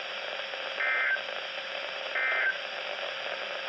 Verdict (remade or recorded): recorded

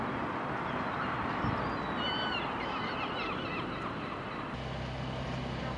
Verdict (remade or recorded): recorded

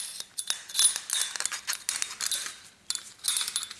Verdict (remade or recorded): recorded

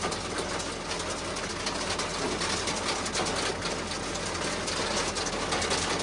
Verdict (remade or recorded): recorded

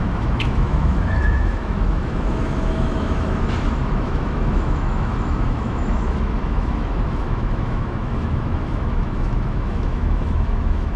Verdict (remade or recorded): remade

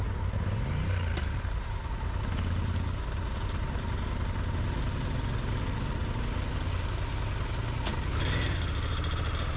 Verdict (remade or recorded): recorded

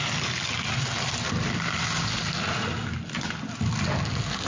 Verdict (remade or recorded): recorded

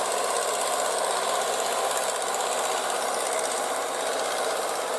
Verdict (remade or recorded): recorded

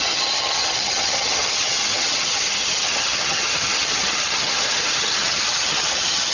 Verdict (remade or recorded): remade